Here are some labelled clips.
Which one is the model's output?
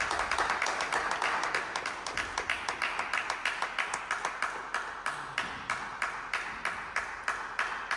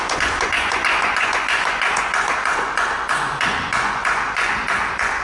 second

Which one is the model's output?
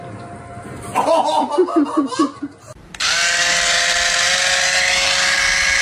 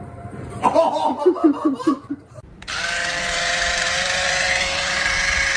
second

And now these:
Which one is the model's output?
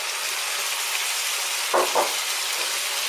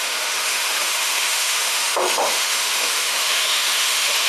second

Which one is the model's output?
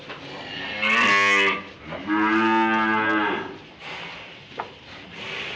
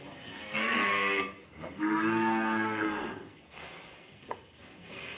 second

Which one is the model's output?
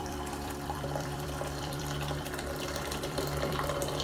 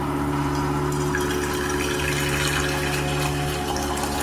first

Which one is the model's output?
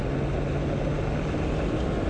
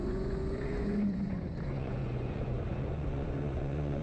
second